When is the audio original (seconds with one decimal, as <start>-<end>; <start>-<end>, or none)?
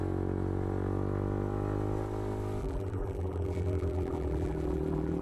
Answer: 0.0-2.6